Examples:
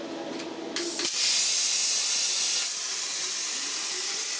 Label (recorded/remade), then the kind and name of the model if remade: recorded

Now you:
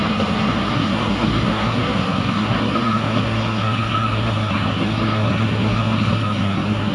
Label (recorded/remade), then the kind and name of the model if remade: remade, codec, SNAC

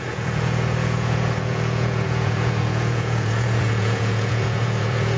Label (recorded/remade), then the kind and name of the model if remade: remade, vocoder, Vocos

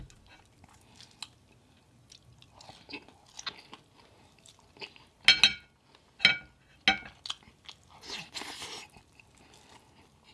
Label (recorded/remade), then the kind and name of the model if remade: recorded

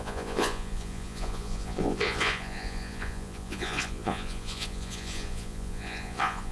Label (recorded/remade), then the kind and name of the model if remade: remade, vocoder, Vocos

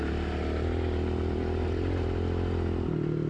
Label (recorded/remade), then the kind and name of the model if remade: recorded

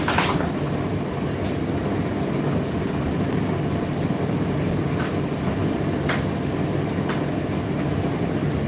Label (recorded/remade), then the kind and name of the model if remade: recorded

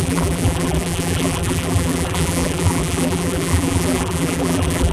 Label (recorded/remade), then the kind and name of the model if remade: remade, vocoder, BigVGAN v2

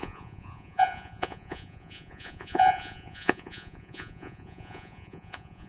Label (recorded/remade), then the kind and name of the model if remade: remade, vocoder, Vocos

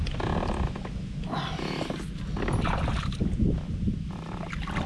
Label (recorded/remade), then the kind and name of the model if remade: recorded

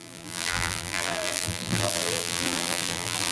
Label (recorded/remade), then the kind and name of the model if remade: remade, vocoder, BigVGAN v2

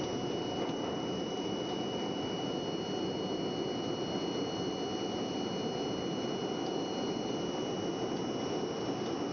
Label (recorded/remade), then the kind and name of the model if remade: recorded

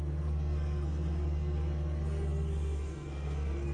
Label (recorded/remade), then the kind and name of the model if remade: remade, codec, SNAC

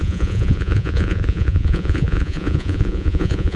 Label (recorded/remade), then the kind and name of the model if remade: remade, vocoder, Vocos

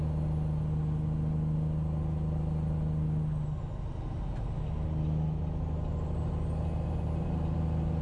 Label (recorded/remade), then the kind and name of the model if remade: recorded